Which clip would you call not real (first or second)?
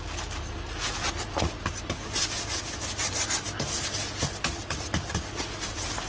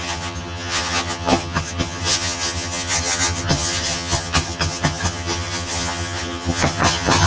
second